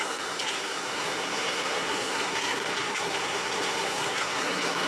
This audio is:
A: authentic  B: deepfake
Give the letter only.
B